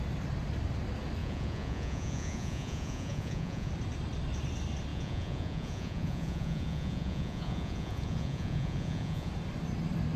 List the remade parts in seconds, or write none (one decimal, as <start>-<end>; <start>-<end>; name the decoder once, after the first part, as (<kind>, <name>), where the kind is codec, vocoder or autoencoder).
1.2-3.7 (vocoder, Vocos); 4.9-9.3